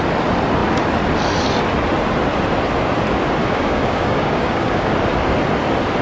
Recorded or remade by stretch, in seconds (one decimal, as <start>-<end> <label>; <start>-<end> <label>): 0.0-3.4 recorded; 3.4-4.9 remade; 4.9-6.0 recorded